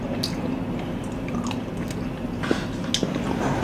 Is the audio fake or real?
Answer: real